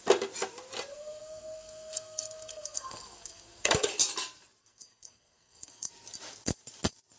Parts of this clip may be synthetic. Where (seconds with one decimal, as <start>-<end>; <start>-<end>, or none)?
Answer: 0.9-3.9; 4.6-5.9

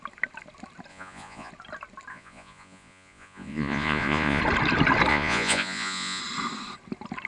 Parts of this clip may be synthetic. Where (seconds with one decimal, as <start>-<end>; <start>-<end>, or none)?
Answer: 0.9-1.5; 2.1-4.4; 5.1-6.2

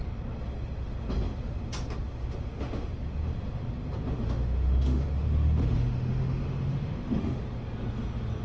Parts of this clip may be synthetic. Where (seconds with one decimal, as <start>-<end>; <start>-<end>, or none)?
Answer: 2.2-2.9; 4.2-7.4

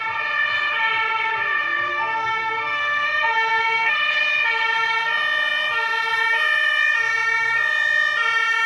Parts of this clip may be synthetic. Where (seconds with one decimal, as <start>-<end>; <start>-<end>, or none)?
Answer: 1.9-4.1

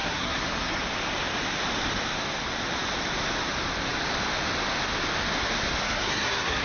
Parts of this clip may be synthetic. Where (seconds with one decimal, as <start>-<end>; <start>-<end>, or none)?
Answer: 0.0-0.8; 5.8-6.6

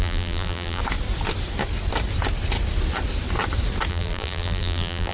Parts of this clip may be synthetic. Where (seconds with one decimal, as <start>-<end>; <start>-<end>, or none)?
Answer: 0.0-0.8; 3.9-5.1